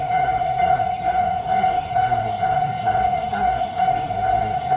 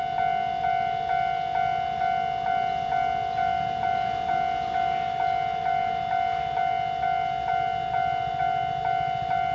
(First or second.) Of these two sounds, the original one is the second